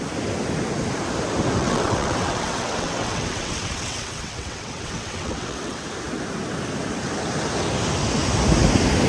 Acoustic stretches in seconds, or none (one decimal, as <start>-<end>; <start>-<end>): 0.0-1.6; 5.8-9.1